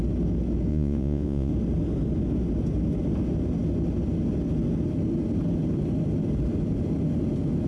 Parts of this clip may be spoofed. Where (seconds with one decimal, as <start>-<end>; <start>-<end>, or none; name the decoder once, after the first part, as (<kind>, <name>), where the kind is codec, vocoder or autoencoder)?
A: 0.7-1.5 (vocoder, Vocos)